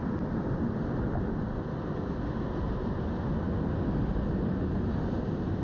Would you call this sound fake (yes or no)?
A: no